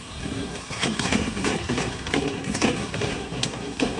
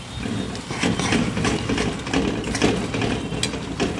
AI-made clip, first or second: first